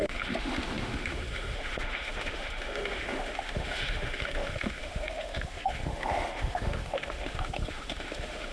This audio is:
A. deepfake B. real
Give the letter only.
A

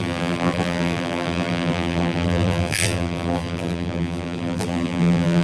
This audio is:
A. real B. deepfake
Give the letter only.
B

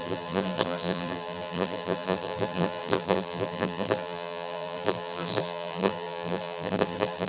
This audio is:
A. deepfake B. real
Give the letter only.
A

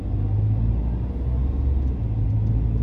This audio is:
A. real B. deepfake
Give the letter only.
A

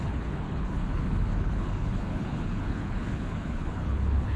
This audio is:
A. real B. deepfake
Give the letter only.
B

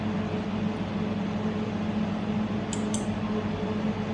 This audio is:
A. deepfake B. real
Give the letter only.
B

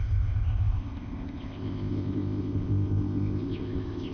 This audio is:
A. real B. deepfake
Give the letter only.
B